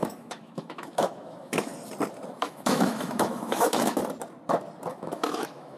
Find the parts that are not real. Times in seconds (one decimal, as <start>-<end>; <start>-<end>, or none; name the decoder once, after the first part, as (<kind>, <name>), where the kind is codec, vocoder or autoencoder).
0.0-1.7 (autoencoder, DAC-VAE); 2.4-4.0; 4.9-5.8